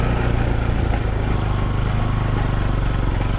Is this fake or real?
real